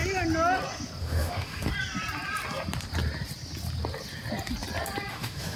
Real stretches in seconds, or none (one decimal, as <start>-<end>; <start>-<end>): 0.0-1.0; 1.7-5.1